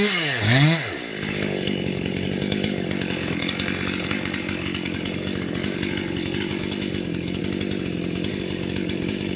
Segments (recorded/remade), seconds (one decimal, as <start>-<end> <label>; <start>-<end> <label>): 0.0-7.4 remade; 7.4-8.3 recorded; 8.3-9.4 remade